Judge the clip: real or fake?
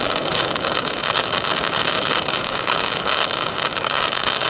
fake